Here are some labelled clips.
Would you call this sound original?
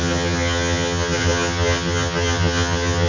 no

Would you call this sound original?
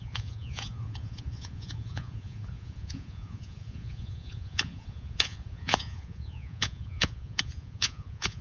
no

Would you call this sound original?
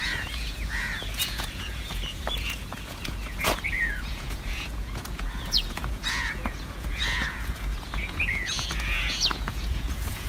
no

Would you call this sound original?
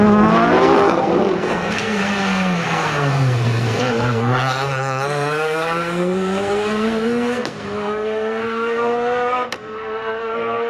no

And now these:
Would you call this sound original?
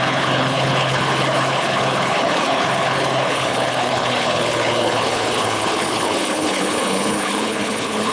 no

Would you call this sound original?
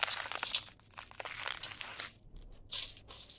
yes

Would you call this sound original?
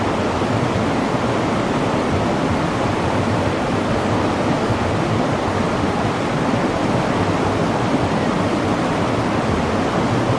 yes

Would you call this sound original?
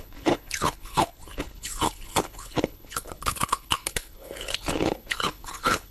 no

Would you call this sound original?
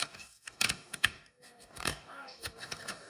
no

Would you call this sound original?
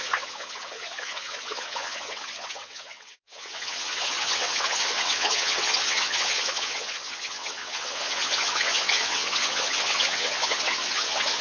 no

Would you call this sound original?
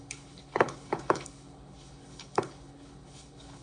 no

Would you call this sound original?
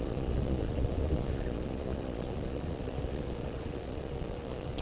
no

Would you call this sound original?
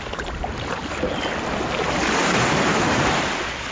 yes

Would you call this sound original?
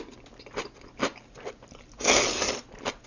yes